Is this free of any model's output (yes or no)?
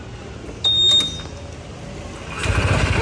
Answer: yes